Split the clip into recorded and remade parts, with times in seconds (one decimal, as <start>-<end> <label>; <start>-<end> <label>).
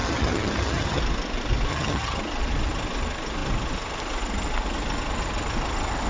0.0-1.0 remade; 1.0-1.7 recorded; 1.7-2.2 remade; 2.2-6.1 recorded